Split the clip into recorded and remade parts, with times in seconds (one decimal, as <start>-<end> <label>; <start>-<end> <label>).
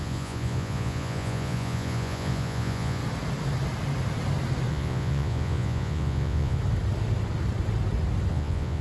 0.0-3.0 remade; 3.0-4.7 recorded; 4.7-6.6 remade; 6.6-8.3 recorded; 8.3-8.8 remade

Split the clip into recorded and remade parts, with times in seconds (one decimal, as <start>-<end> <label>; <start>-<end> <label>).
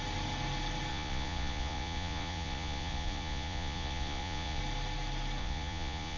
0.0-0.9 recorded; 0.9-4.6 remade; 4.6-5.4 recorded; 5.4-6.2 remade